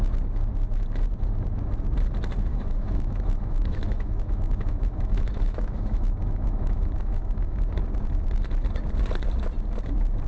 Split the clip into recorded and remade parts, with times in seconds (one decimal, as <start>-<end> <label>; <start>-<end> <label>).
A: 0.0-2.5 recorded; 2.5-7.7 remade; 7.7-10.3 recorded